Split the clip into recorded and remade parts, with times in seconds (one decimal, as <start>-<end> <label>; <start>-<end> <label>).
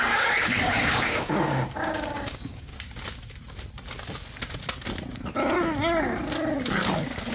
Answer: 0.0-2.7 remade; 2.7-7.3 recorded